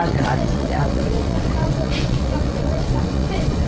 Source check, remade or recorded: remade